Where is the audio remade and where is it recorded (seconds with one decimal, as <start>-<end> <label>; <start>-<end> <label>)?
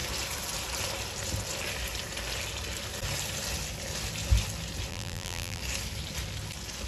0.0-4.9 recorded; 4.9-5.6 remade; 5.6-6.9 recorded